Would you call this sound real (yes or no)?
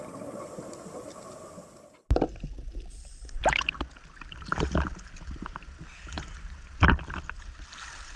yes